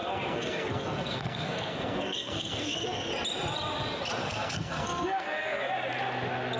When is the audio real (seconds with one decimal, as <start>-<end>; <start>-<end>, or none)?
3.1-4.2; 5.7-6.6